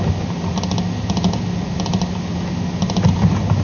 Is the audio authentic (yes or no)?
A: yes